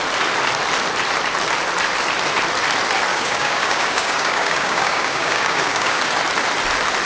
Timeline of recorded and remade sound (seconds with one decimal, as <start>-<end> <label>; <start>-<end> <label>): 0.0-3.1 recorded; 3.1-6.0 remade; 6.0-7.0 recorded